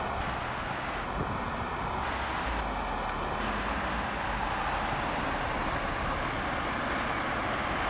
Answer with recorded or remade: recorded